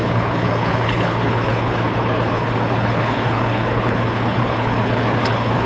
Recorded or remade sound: remade